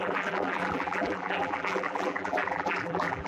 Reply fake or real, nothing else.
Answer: fake